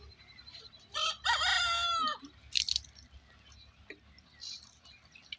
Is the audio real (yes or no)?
yes